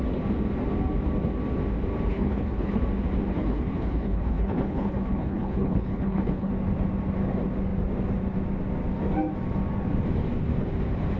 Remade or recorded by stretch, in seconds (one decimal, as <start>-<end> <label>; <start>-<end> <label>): 0.0-2.1 recorded; 2.1-2.8 remade; 2.8-3.3 recorded; 3.3-6.5 remade; 6.5-11.2 recorded